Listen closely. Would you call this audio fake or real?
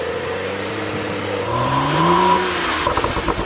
fake